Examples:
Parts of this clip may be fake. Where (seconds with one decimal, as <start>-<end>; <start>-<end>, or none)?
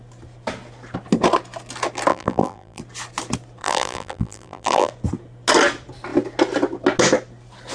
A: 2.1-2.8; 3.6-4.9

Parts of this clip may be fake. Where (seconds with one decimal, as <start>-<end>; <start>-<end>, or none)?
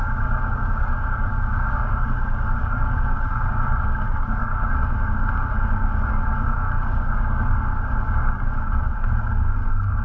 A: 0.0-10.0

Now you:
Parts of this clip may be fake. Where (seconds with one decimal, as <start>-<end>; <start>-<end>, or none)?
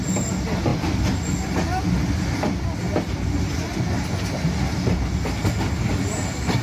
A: none